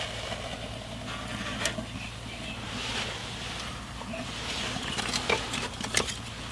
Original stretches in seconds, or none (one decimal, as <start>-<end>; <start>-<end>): 0.0-6.5